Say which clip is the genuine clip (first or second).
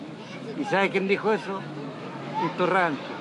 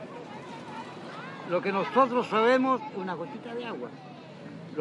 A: second